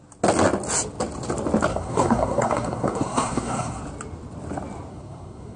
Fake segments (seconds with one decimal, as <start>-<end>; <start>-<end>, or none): 1.7-3.8; 4.9-5.6

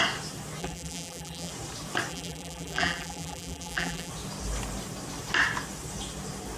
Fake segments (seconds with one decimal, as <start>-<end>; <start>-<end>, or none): 0.6-1.5; 2.1-4.1

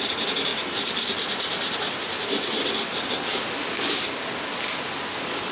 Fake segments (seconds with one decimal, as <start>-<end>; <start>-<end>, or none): none